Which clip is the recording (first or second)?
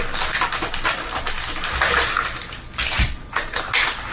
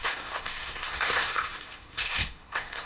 first